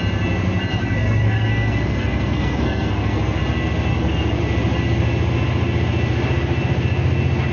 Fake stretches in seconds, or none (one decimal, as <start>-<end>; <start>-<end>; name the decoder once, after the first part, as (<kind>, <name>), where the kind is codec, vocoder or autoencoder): 0.7-3.4 (codec, SNAC); 3.9-4.4